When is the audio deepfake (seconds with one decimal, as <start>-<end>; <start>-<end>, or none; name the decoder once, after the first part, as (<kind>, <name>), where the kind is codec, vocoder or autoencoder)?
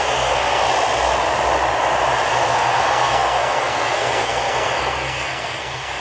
0.0-0.6 (codec, SNAC); 2.3-6.0